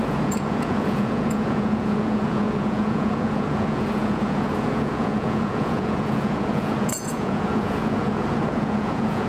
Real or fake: fake